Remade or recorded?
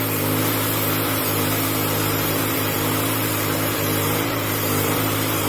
remade